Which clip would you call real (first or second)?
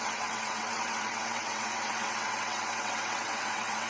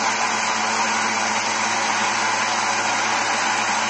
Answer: second